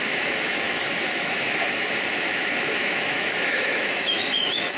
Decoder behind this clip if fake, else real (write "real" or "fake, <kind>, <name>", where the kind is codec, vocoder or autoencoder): fake, autoencoder, DAC-VAE